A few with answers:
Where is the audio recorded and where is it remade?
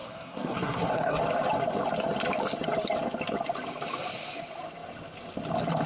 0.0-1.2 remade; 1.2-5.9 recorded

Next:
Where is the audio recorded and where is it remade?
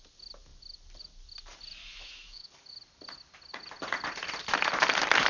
0.0-1.8 recorded; 1.8-2.5 remade; 2.5-5.3 recorded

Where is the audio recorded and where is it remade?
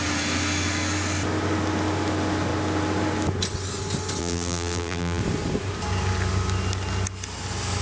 0.0-4.2 recorded; 4.2-5.2 remade; 5.2-7.8 recorded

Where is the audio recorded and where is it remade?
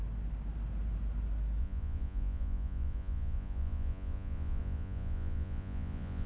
0.0-1.6 recorded; 1.6-6.3 remade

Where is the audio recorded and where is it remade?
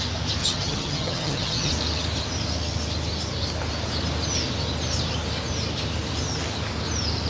0.0-0.4 recorded; 0.4-1.7 remade; 1.7-7.3 recorded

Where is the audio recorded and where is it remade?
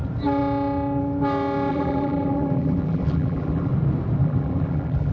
0.0-1.7 recorded; 1.7-3.7 remade; 3.7-4.2 recorded; 4.2-5.1 remade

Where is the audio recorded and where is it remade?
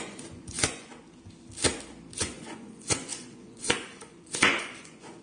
0.0-0.9 remade; 0.9-2.2 recorded; 2.2-5.2 remade